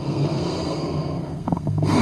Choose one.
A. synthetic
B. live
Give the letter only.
A